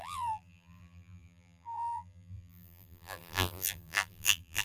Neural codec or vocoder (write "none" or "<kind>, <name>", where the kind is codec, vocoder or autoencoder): vocoder, BigVGAN v2